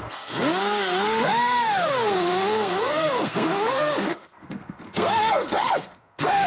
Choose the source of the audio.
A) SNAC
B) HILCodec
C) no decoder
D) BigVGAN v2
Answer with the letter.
A